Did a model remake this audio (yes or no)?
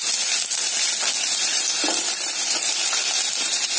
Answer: no